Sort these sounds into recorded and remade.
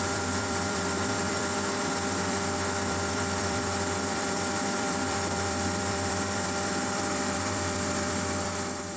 remade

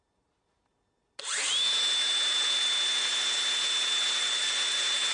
recorded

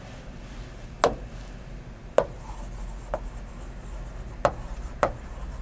recorded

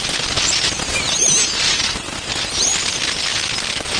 recorded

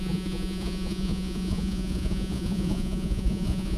remade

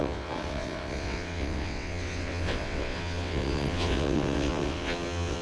remade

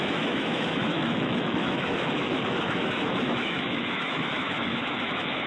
remade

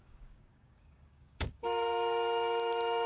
remade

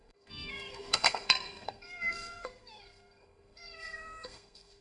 remade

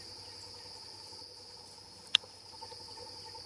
recorded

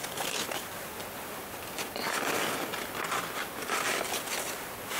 recorded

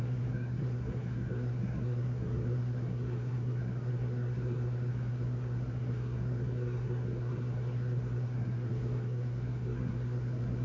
remade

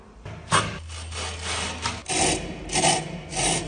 recorded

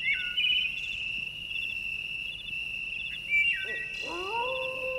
recorded